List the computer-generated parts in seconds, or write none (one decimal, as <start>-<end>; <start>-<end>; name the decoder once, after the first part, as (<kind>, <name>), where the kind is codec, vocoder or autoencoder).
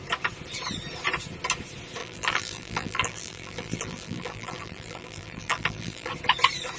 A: 2.0-6.1 (vocoder, BigVGAN v2)